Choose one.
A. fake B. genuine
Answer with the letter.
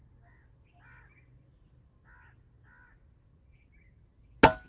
B